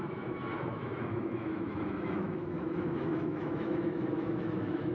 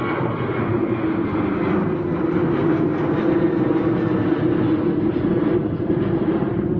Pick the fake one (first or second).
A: first